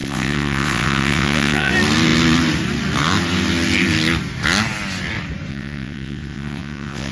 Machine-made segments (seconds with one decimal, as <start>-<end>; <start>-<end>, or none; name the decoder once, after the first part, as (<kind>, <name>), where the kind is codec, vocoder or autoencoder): 0.0-1.7 (vocoder, WaveNeXt); 5.5-7.1